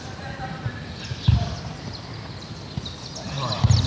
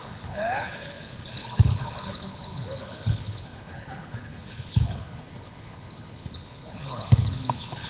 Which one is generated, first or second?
second